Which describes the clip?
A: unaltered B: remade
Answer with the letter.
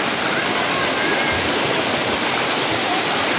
A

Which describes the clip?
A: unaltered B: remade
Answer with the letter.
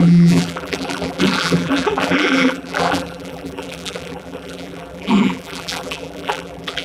B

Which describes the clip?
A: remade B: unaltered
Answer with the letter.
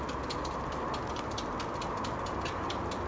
B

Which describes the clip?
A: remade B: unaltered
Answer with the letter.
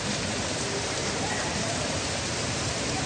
A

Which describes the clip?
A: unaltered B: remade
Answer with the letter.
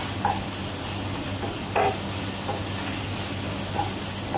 A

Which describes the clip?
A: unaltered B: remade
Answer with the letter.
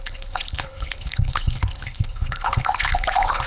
B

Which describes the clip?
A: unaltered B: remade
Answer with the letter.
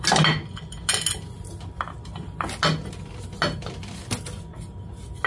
A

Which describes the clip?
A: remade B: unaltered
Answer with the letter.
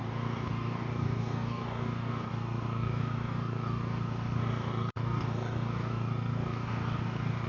A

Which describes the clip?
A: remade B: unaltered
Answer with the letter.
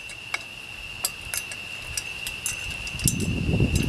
B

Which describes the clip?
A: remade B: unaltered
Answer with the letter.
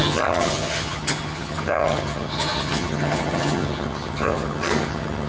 A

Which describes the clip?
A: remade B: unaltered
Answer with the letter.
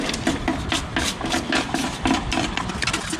B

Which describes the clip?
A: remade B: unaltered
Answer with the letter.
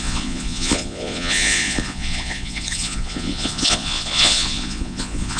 A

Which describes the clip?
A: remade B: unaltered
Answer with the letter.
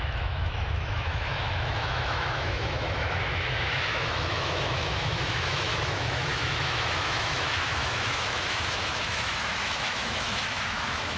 A